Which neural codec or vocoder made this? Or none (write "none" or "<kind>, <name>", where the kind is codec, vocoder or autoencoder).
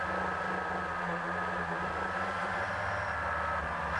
none